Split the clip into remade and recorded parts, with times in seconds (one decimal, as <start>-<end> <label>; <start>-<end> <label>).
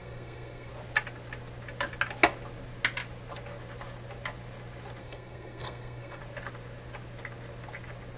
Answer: 0.0-0.7 remade; 0.7-5.0 recorded; 5.0-6.2 remade; 6.2-8.2 recorded